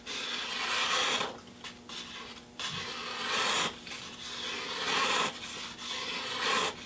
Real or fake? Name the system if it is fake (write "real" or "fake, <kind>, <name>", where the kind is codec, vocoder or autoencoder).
real